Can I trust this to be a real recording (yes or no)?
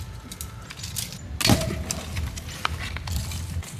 yes